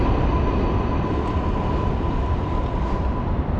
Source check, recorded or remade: recorded